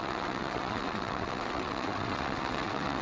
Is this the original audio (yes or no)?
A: no